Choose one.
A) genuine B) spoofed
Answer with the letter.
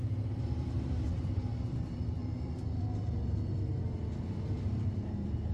B